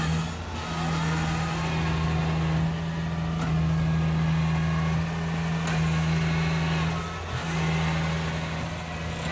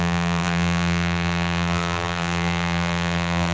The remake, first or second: second